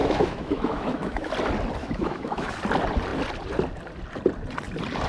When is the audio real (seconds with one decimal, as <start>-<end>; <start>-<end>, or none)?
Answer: 1.3-1.8; 2.5-5.1